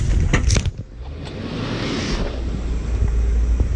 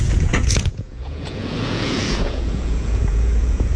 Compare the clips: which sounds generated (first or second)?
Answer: second